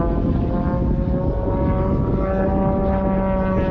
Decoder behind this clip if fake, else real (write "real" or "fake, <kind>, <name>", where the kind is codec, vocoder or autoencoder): real